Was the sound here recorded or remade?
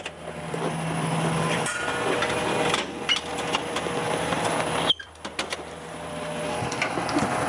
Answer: recorded